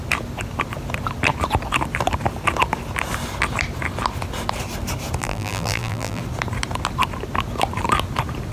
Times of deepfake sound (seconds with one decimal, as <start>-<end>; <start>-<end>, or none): 5.2-6.2